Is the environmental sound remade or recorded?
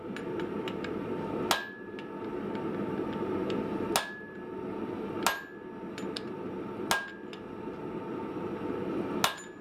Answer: recorded